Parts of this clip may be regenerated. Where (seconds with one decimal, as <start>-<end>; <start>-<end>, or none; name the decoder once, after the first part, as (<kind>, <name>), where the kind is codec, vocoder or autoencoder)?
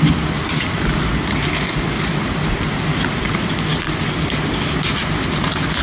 none